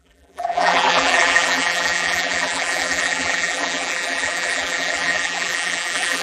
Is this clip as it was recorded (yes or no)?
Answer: no